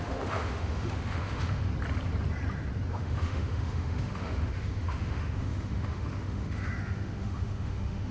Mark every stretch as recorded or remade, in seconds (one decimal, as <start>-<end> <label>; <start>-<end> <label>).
0.0-1.7 remade; 1.7-2.9 recorded; 2.9-8.1 remade